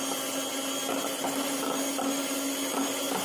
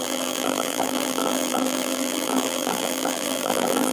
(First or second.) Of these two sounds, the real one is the first